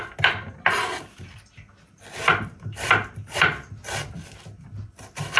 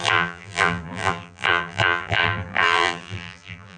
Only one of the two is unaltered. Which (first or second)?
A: first